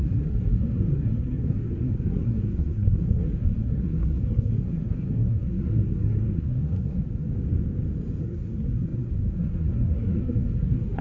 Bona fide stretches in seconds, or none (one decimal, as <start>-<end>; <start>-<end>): 7.0-8.2